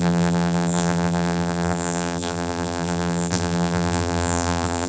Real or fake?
fake